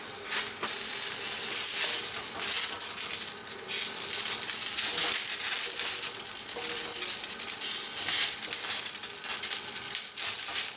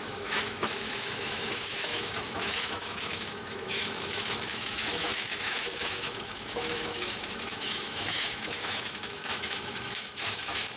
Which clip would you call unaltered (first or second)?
first